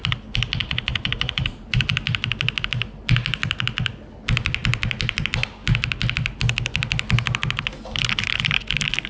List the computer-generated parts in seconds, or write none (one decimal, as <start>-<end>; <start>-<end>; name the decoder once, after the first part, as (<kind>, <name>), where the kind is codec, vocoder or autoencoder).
0.6-1.9 (vocoder, Vocos)